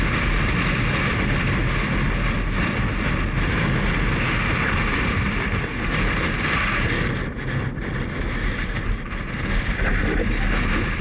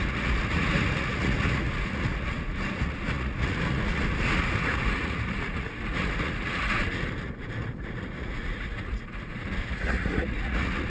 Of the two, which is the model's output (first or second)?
second